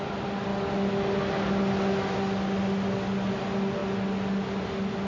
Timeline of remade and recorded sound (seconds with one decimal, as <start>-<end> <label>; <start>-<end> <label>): 0.0-5.1 recorded

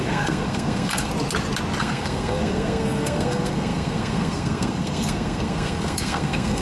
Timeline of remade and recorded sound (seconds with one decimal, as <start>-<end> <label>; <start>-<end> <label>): 0.0-1.1 remade; 1.1-1.8 recorded; 1.8-6.6 remade

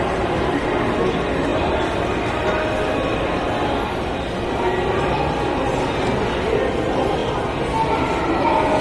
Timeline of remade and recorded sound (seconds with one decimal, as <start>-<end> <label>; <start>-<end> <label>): 0.0-8.8 recorded

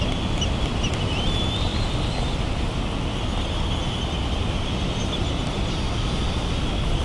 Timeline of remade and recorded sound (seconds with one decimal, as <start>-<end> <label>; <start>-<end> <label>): 0.0-7.0 recorded

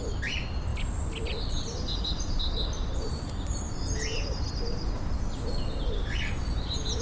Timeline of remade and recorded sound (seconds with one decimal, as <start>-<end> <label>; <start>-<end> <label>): 0.0-0.7 recorded; 0.7-3.3 remade; 3.3-4.1 recorded; 4.1-4.9 remade; 4.9-7.0 recorded